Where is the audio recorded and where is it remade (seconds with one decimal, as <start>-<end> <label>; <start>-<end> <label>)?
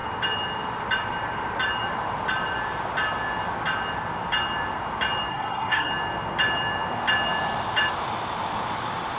0.0-5.3 recorded; 5.3-5.9 remade; 5.9-9.2 recorded